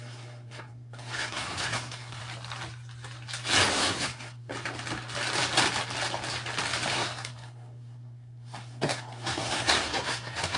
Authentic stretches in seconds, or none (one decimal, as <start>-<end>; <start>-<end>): 2.2-3.7; 4.5-6.9

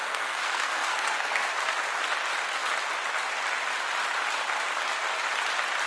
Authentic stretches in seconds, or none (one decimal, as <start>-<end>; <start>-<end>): 1.5-5.9

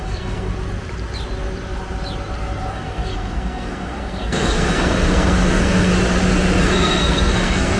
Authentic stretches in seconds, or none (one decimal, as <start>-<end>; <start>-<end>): 0.5-2.7; 5.9-6.6

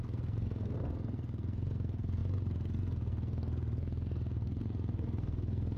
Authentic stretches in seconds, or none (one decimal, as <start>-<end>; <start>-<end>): none

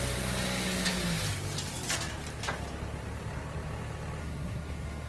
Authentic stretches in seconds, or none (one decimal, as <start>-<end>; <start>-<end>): 0.0-4.2